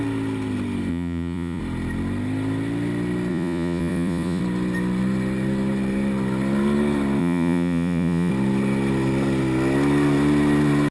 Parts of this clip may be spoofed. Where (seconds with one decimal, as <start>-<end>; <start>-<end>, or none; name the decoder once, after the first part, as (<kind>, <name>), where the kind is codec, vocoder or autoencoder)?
0.9-1.6 (vocoder, Vocos); 3.3-4.4; 7.2-8.3